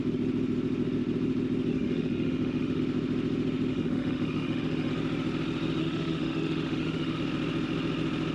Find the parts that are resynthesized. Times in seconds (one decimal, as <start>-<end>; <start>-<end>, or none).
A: 1.7-2.8; 3.7-4.9; 5.8-7.2